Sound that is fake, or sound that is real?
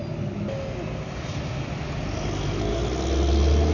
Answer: real